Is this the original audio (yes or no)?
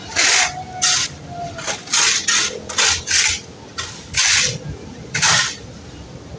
yes